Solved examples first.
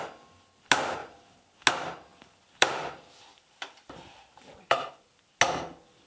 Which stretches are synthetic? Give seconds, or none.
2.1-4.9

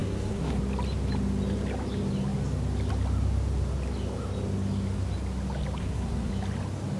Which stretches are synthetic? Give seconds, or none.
0.0-0.6; 5.8-6.3

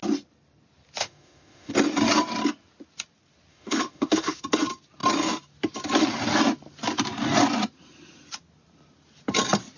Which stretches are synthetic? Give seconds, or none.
1.0-1.7; 3.5-4.4

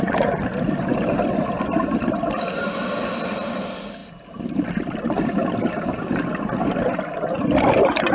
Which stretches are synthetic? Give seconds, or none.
none

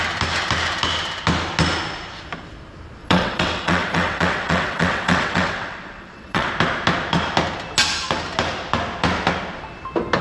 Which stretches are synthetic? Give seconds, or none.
3.0-6.5

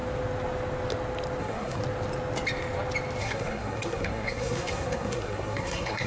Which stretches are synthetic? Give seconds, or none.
1.4-1.8; 3.2-6.1

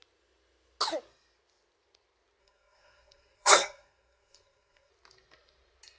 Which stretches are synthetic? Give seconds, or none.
2.4-4.9